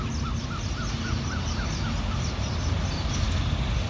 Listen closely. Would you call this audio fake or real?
real